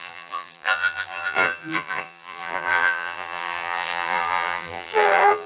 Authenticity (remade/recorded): remade